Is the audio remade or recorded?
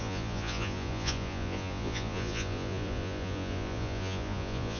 remade